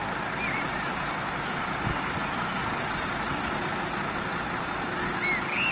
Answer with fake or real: real